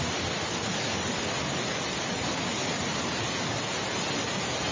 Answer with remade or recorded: recorded